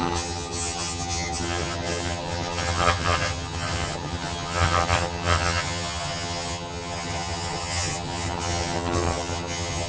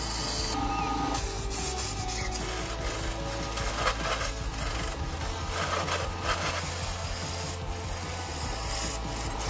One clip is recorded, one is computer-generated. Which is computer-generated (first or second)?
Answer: first